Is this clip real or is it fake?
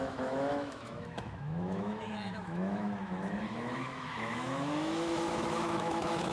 fake